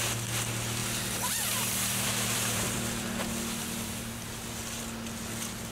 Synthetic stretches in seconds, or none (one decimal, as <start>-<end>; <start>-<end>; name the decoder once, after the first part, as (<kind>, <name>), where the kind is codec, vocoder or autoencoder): 0.8-4.0 (vocoder, BigVGAN v2)

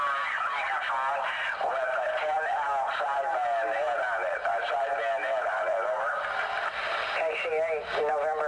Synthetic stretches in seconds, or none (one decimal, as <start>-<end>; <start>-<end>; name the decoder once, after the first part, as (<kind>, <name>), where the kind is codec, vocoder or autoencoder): 1.7-5.0 (vocoder, BigVGAN v2); 7.8-8.5

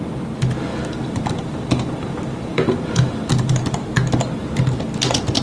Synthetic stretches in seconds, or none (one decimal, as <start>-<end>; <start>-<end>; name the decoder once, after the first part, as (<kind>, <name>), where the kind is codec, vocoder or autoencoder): 0.7-3.6 (vocoder, BigVGAN v2)